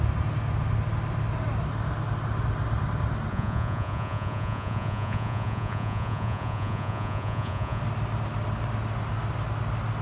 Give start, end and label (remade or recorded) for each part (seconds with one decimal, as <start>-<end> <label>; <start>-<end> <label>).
0.0-3.3 recorded; 3.3-7.8 remade; 7.8-10.0 recorded

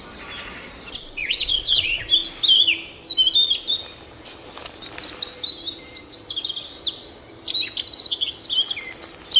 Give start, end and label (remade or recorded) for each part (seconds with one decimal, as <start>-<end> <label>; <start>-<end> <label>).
0.0-1.2 recorded; 1.2-2.0 remade; 2.0-9.4 recorded

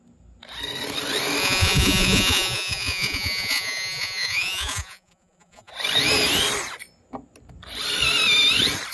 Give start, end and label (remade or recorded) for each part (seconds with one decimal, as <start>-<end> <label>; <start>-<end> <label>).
0.0-1.4 recorded; 1.4-5.7 remade; 5.7-8.9 recorded

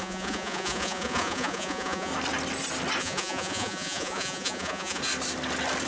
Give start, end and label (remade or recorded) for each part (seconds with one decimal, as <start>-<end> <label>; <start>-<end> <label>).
0.0-2.1 remade; 2.1-3.0 recorded; 3.0-5.0 remade; 5.0-5.9 recorded